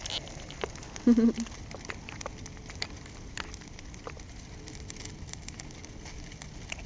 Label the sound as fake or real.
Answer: real